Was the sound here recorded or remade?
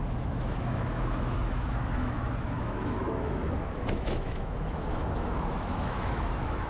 remade